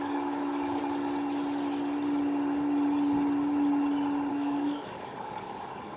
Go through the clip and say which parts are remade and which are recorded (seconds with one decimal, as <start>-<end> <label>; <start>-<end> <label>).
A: 0.0-0.8 remade; 0.8-4.3 recorded; 4.3-6.0 remade